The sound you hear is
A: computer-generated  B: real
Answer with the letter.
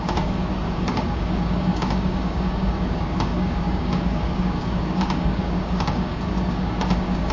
A